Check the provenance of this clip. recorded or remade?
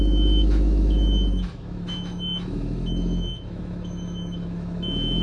remade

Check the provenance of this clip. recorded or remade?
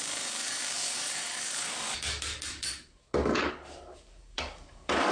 remade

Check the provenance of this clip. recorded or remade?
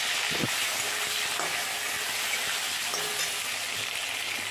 recorded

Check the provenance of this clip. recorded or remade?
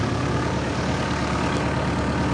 remade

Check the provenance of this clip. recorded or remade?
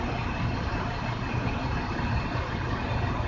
recorded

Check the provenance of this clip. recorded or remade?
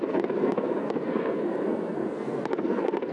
remade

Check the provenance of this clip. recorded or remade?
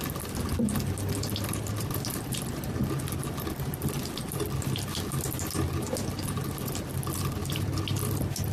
recorded